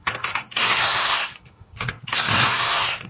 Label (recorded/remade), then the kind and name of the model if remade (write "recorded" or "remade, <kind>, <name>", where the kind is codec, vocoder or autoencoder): remade, codec, SNAC